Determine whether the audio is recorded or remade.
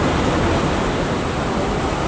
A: recorded